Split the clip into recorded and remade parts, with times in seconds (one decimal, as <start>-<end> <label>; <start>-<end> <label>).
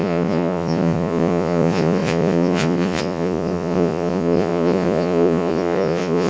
0.0-6.3 remade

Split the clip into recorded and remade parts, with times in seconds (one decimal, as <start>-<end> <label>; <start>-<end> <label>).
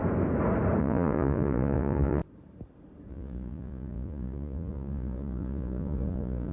0.0-0.8 recorded; 0.8-2.2 remade; 2.2-3.1 recorded; 3.1-6.5 remade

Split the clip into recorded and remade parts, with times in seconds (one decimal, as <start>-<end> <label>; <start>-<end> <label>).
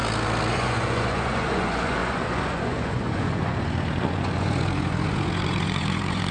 0.0-0.5 recorded; 0.5-6.3 remade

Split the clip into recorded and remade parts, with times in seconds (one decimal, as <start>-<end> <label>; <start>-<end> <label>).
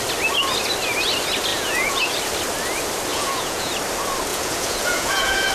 0.0-1.5 recorded; 1.5-2.1 remade; 2.1-3.1 recorded; 3.1-3.7 remade; 3.7-4.3 recorded; 4.3-5.5 remade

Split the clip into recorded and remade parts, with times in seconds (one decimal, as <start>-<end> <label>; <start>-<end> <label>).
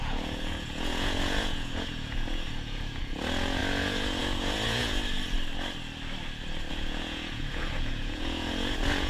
0.0-5.0 remade; 5.0-6.7 recorded; 6.7-9.1 remade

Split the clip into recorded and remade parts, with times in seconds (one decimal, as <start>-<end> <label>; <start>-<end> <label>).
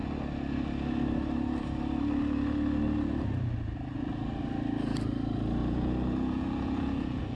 0.0-5.6 recorded; 5.6-7.4 remade